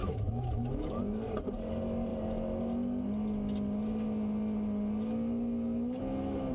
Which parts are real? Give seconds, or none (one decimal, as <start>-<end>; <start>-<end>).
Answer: 1.0-6.5